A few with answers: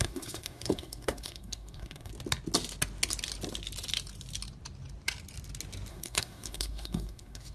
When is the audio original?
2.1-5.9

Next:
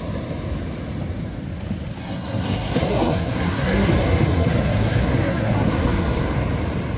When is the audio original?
0.0-2.0; 6.2-7.0

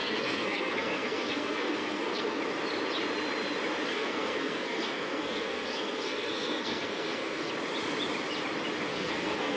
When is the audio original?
2.4-3.9; 7.5-8.9

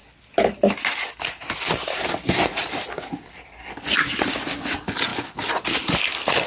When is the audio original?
0.0-6.5

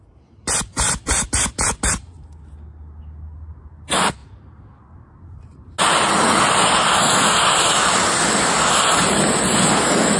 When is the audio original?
0.0-10.2

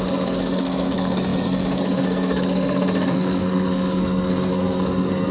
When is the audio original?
none